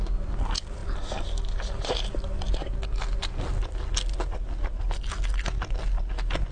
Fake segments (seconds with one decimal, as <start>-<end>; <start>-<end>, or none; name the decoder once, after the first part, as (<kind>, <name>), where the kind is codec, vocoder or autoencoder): none

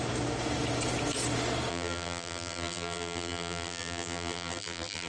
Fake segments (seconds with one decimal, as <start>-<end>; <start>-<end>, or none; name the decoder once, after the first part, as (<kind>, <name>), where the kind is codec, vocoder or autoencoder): 1.7-5.1 (vocoder, BigVGAN v2)

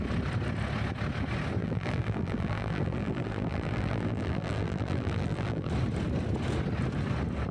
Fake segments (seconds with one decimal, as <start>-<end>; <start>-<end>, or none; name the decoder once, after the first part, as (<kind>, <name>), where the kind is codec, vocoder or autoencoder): 1.6-5.7 (vocoder, BigVGAN v2)

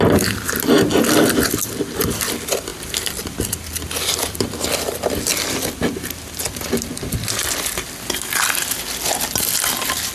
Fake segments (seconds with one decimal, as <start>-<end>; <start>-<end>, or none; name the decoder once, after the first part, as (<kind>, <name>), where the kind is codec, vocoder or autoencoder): none

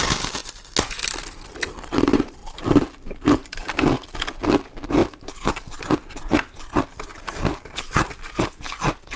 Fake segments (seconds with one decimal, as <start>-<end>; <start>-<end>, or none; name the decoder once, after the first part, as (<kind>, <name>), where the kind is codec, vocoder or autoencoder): 2.4-3.7 (vocoder, BigVGAN v2); 5.0-5.5; 7.1-8.1

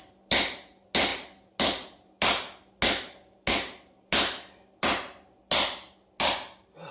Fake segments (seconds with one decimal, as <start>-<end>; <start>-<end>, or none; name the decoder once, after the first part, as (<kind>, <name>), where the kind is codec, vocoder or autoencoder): none

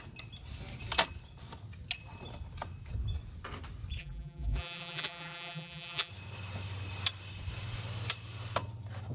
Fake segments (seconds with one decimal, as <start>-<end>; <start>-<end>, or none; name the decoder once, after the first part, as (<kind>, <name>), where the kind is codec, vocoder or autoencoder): 4.0-6.1 (vocoder, BigVGAN v2)